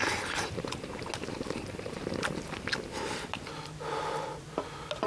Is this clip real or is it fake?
real